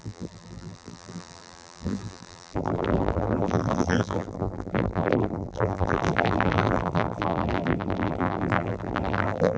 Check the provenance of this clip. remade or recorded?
remade